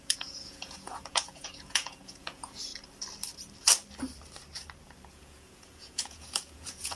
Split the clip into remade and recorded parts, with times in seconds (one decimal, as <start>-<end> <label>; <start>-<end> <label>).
0.0-2.7 remade; 2.7-5.1 recorded; 5.1-7.0 remade